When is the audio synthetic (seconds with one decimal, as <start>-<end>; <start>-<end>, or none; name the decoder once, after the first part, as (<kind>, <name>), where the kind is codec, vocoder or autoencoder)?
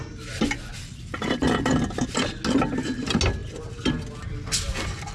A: none